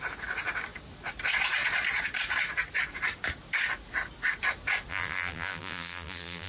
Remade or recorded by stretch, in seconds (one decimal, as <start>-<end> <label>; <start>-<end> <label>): 0.0-4.9 recorded; 4.9-6.5 remade

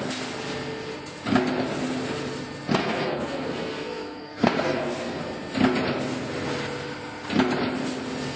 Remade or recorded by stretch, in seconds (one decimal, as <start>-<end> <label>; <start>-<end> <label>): 0.0-2.8 recorded; 2.8-5.2 remade; 5.2-8.4 recorded